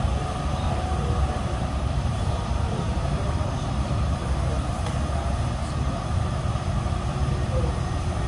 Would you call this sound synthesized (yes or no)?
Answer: yes